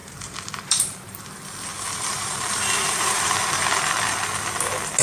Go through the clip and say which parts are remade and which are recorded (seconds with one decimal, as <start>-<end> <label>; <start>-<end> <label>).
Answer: 0.0-1.2 remade; 1.2-1.7 recorded; 1.7-3.4 remade; 3.4-5.0 recorded

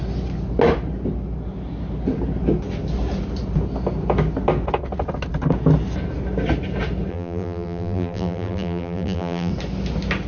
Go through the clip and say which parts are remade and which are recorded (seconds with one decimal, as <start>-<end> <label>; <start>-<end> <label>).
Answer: 0.0-7.1 recorded; 7.1-9.5 remade; 9.5-10.3 recorded